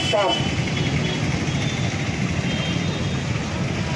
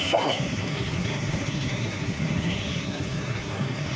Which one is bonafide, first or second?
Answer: first